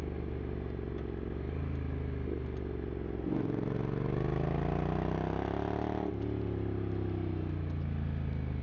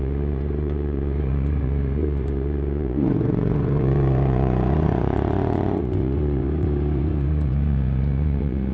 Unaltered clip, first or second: first